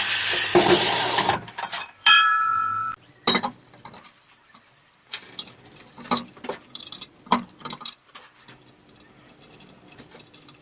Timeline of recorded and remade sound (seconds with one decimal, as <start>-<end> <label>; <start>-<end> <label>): 0.0-0.5 remade; 0.5-1.8 recorded; 1.8-10.6 remade